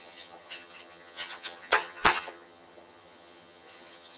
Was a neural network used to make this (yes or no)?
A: yes